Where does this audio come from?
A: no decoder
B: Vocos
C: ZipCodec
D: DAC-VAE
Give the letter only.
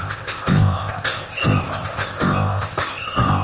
C